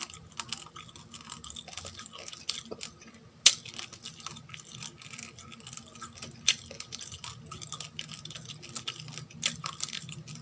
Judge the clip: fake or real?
real